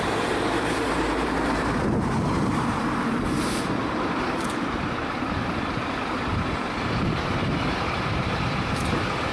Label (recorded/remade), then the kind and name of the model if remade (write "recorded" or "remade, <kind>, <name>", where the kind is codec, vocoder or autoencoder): remade, vocoder, BigVGAN v2